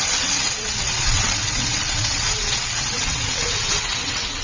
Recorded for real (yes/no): no